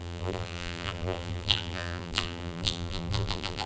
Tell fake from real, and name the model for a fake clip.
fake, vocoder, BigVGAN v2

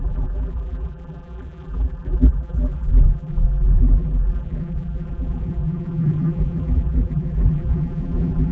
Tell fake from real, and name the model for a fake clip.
fake, vocoder, BigVGAN v2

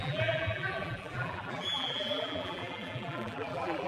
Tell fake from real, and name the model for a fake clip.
fake, vocoder, BigVGAN v2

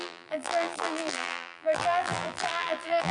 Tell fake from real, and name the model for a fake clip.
fake, vocoder, BigVGAN v2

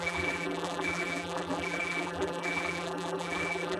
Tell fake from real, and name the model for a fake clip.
fake, vocoder, BigVGAN v2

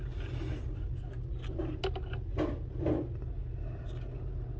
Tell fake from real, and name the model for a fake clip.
real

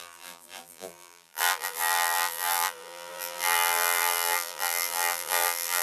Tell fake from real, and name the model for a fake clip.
fake, vocoder, BigVGAN v2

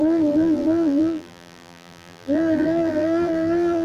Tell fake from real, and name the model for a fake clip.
fake, vocoder, BigVGAN v2